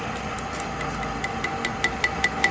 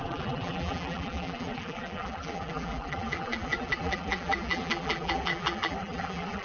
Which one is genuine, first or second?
first